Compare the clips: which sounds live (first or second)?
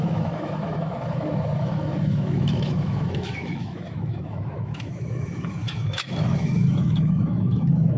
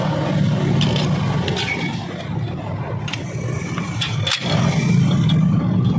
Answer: second